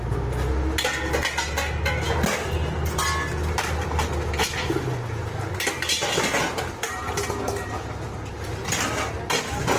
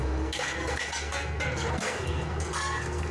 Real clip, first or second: first